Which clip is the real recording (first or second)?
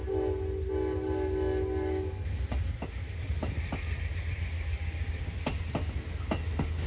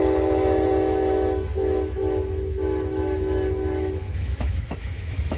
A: first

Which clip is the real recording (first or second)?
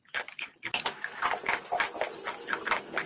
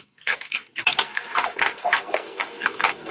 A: first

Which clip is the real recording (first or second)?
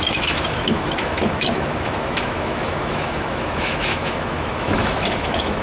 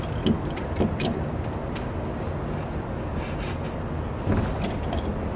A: second